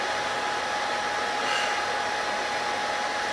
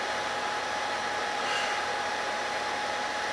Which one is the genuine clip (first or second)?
first